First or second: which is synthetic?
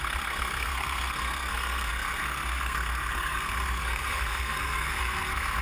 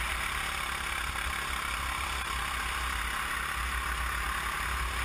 first